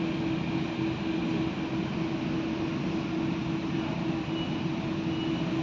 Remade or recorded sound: recorded